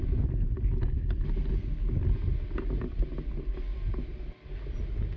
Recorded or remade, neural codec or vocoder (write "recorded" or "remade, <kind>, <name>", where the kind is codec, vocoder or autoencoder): recorded